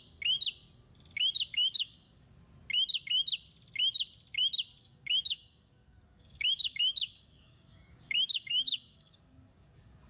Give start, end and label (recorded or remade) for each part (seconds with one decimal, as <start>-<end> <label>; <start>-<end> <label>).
0.0-1.5 recorded; 1.5-2.4 remade; 2.4-4.8 recorded; 4.8-10.1 remade